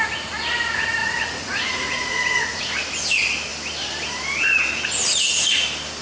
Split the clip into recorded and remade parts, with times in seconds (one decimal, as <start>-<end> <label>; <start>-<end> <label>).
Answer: 0.0-1.0 recorded; 1.0-2.7 remade; 2.7-6.0 recorded